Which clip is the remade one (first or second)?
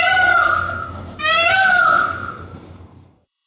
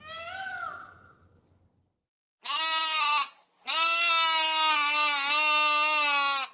first